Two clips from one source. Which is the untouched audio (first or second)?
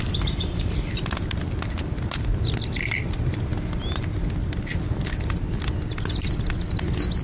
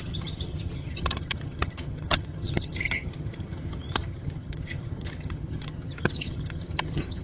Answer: first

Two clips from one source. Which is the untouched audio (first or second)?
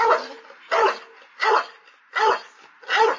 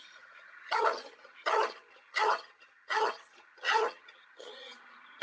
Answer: first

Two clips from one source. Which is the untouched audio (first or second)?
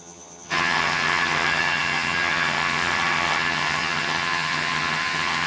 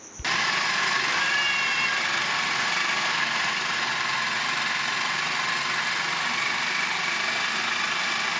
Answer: second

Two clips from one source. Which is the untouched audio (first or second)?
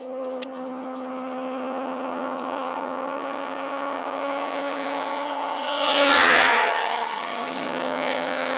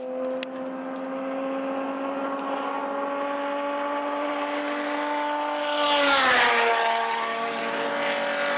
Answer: second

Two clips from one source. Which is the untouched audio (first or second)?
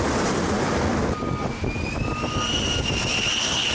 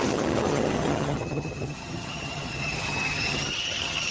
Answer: first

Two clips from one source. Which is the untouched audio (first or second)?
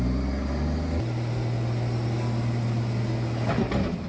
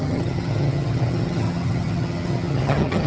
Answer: first